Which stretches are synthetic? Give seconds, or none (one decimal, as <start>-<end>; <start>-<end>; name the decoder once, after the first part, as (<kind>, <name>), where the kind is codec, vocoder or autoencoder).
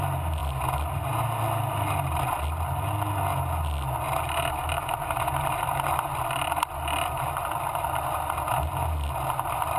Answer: none